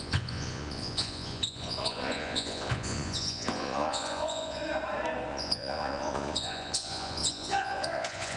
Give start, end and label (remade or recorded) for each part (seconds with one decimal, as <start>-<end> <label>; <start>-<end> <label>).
0.0-4.6 remade; 4.6-5.3 recorded; 5.3-8.4 remade